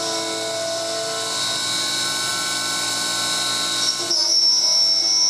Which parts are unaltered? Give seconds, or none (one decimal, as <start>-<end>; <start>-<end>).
0.0-5.3